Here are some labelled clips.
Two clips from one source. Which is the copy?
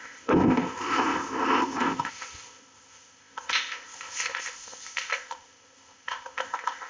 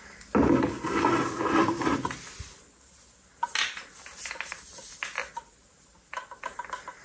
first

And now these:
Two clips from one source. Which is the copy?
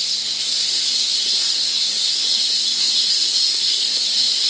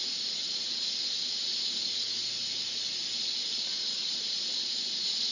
first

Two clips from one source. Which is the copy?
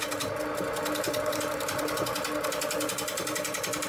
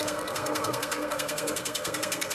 second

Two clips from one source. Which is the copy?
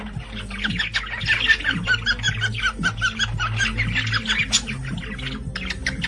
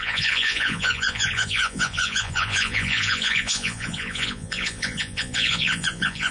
second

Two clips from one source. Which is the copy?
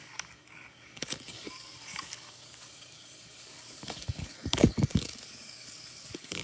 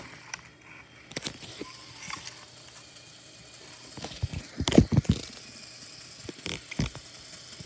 first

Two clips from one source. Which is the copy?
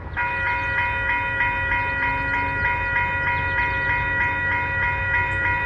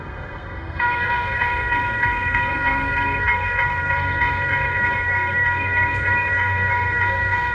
second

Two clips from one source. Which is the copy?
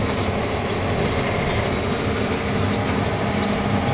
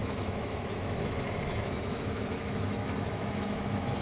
second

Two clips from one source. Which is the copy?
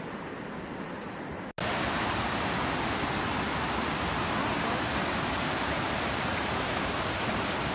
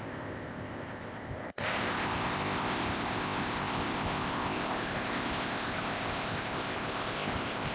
second